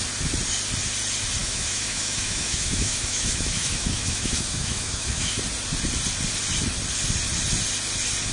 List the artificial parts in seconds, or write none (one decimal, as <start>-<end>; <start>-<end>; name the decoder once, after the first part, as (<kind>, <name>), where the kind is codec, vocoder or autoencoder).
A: 1.4-5.4 (autoencoder, DAC-VAE)